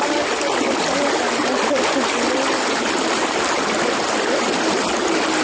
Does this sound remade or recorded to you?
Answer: recorded